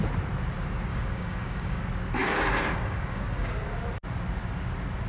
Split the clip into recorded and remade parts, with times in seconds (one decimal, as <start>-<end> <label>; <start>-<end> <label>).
0.0-0.9 recorded; 0.9-1.8 remade; 1.8-2.2 recorded; 2.2-3.5 remade; 3.5-5.1 recorded